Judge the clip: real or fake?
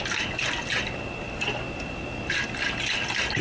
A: real